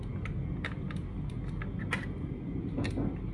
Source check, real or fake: real